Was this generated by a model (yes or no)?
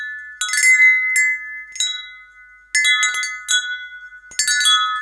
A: no